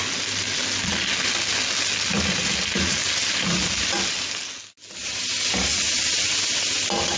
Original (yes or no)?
yes